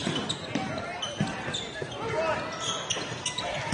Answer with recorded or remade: recorded